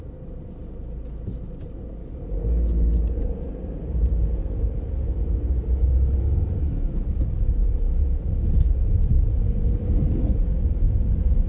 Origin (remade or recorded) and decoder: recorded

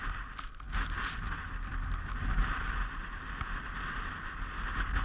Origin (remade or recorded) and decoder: recorded